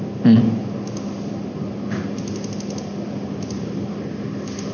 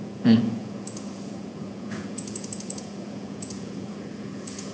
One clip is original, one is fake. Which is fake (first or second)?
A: second